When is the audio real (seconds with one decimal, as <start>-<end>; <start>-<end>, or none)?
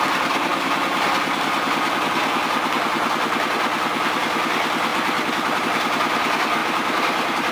0.0-6.6